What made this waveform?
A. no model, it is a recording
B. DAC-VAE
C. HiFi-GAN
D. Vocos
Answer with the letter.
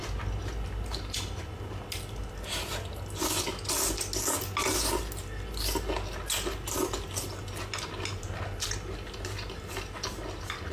A